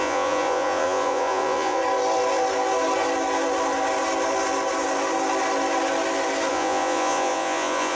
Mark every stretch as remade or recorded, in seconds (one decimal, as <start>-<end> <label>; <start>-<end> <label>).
0.0-1.8 remade; 1.8-6.5 recorded; 6.5-7.9 remade